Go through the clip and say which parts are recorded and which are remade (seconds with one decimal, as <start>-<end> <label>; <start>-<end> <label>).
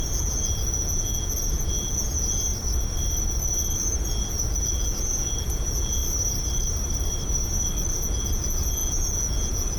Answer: 0.0-2.5 remade; 2.5-4.0 recorded; 4.0-6.0 remade; 6.0-7.9 recorded; 7.9-9.8 remade